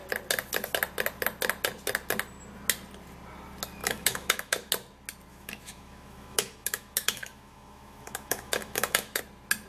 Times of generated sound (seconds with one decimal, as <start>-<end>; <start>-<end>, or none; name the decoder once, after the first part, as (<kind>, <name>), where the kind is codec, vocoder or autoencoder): 3.8-4.7 (autoencoder, DAC-VAE); 5.3-9.2